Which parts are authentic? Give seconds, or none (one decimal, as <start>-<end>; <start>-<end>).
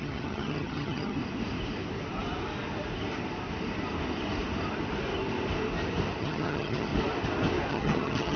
1.2-6.2; 6.9-7.7